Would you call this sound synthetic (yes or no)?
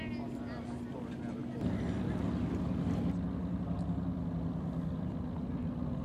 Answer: no